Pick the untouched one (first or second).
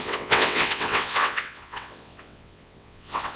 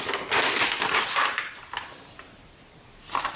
second